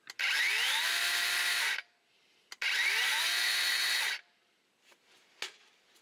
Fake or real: real